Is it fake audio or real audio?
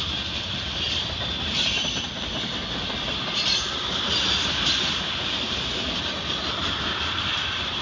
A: real